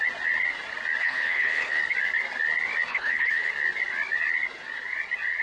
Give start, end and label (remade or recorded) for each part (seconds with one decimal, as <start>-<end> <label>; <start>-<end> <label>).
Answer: 0.0-1.0 recorded; 1.0-1.8 remade; 1.8-2.9 recorded; 2.9-3.5 remade; 3.5-5.4 recorded